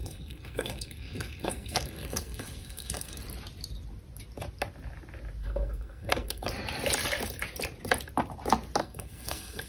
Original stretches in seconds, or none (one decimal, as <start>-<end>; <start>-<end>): 3.2-5.4; 6.5-8.8